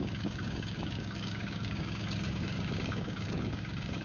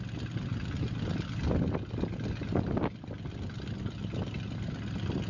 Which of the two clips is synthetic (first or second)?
first